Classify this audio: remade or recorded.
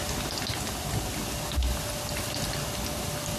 recorded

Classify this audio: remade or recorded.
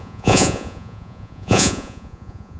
remade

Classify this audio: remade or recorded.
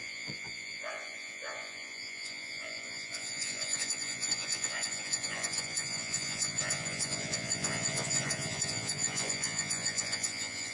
remade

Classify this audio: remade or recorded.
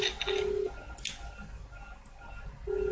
recorded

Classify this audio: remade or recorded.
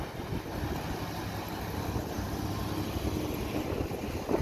recorded